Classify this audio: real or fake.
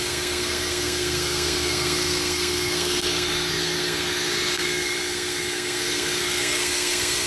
fake